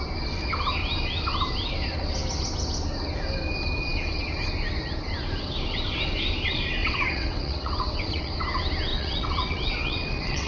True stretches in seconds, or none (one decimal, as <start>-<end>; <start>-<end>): 0.0-6.8; 8.3-8.9